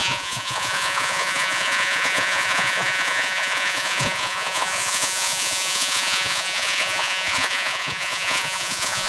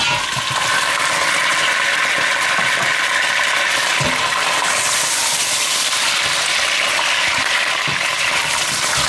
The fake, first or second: first